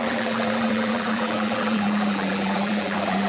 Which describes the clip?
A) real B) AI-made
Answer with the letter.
B